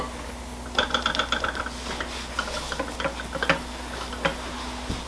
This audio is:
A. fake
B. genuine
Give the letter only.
B